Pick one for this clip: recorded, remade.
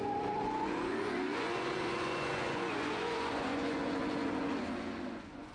remade